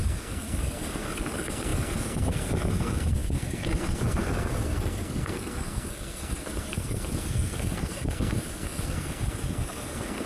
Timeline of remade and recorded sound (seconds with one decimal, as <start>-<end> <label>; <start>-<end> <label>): 0.0-10.3 remade